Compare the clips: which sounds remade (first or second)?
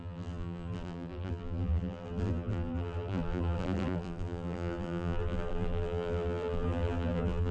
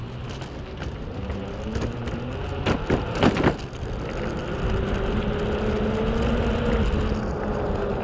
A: first